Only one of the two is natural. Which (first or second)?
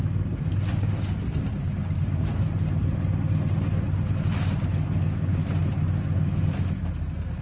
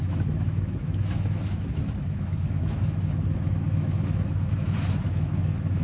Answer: first